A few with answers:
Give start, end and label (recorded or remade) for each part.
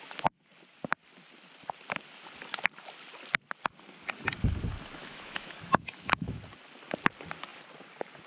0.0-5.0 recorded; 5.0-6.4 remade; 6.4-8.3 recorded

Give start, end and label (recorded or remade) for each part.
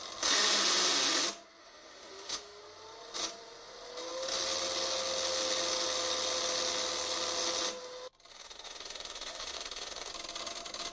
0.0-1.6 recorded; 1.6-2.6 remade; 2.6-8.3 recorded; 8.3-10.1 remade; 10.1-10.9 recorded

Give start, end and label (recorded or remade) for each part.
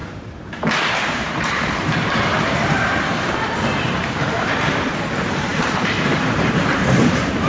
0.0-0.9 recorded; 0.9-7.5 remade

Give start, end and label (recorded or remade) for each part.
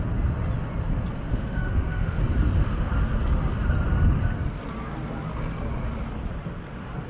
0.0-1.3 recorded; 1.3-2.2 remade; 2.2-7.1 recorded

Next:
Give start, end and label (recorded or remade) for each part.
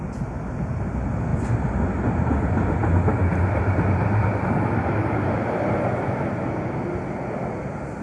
0.0-1.3 recorded; 1.3-1.9 remade; 1.9-8.0 recorded